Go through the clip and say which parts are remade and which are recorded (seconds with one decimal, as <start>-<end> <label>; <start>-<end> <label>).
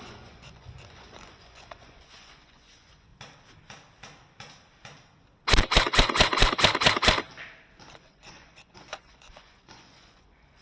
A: 0.0-3.1 remade; 3.1-7.9 recorded; 7.9-10.6 remade